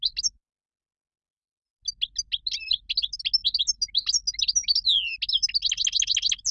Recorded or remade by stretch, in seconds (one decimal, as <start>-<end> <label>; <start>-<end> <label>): 0.0-6.5 recorded

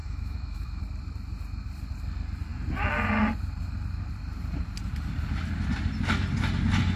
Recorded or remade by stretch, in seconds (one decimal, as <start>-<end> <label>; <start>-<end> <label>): 0.0-0.8 remade; 0.8-7.0 recorded